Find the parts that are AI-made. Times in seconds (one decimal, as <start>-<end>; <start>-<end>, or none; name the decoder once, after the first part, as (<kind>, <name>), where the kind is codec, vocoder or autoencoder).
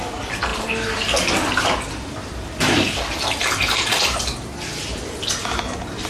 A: none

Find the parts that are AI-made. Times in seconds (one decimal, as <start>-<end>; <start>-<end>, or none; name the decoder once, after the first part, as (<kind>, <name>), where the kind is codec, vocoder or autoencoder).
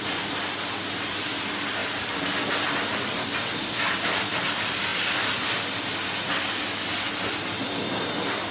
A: none